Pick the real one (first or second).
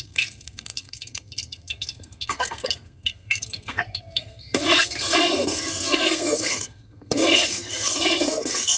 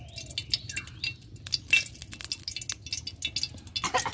second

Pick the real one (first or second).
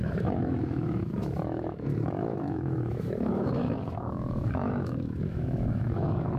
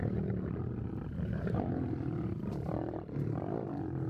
second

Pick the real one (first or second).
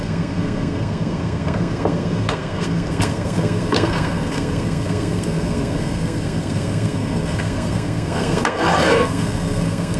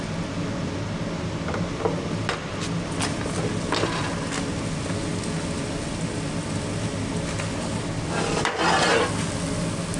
second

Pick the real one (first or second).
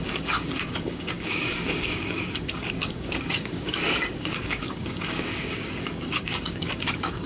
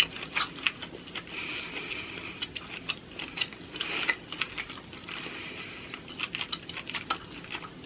second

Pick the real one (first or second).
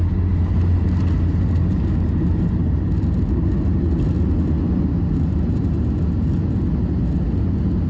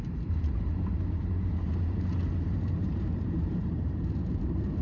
first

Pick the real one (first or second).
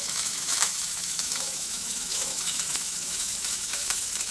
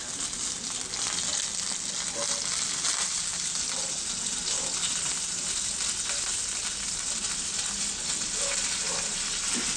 second